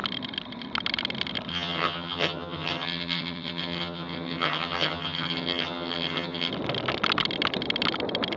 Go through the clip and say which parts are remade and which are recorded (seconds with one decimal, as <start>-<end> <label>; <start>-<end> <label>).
0.0-1.5 recorded; 1.5-6.5 remade; 6.5-8.4 recorded